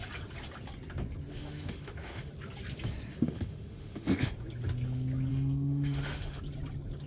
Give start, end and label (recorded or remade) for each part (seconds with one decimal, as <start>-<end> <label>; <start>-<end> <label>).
0.0-1.3 recorded; 1.3-2.3 remade; 2.3-3.1 recorded; 3.1-4.3 remade; 4.3-5.3 recorded; 5.3-6.4 remade; 6.4-7.1 recorded